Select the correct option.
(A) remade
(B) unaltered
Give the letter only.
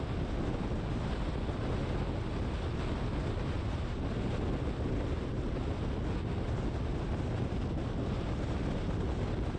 B